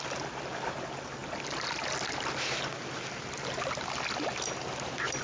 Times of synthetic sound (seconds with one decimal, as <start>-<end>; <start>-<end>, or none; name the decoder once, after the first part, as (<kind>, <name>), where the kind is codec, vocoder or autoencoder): none